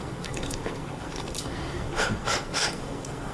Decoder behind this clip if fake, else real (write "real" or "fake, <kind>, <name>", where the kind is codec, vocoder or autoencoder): fake, codec, SNAC